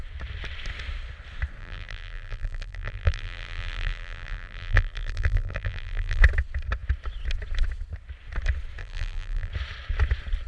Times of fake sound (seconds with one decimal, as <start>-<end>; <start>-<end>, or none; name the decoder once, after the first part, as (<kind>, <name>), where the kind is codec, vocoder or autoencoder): 1.6-6.2 (vocoder, BigVGAN v2); 8.8-9.5